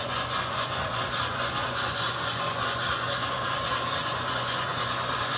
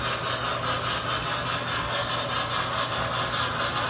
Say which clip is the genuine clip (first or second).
second